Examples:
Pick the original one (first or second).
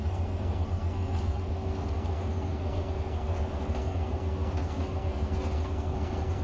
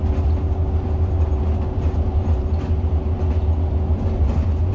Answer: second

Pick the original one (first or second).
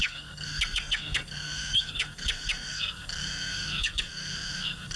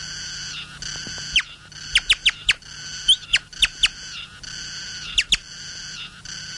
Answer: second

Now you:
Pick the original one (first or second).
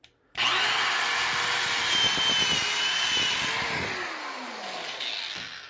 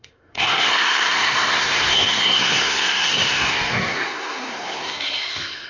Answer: first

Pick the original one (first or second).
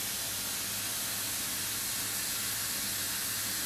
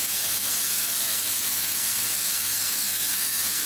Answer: first